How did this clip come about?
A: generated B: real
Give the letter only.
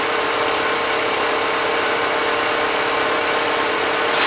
B